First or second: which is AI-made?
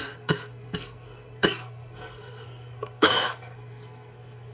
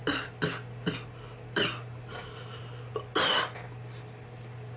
first